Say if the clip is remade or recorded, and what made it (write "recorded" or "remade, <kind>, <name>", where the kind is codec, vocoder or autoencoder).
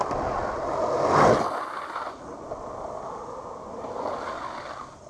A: recorded